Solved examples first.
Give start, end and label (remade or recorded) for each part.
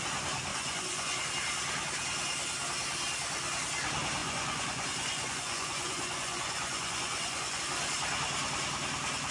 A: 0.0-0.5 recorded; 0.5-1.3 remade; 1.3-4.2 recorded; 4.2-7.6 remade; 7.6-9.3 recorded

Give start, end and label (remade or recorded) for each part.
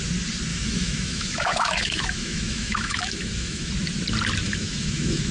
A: 0.0-0.5 recorded; 0.5-3.7 remade; 3.7-4.4 recorded; 4.4-5.3 remade